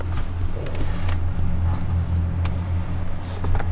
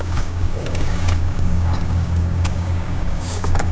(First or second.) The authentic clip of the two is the first